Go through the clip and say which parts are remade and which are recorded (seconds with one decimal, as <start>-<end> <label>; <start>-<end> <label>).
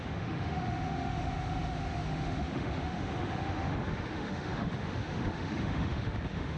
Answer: 0.0-6.6 remade